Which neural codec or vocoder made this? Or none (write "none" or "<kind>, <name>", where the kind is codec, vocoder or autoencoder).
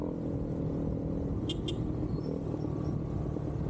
none